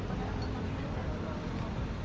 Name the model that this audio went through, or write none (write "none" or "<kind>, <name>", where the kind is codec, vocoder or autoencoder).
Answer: none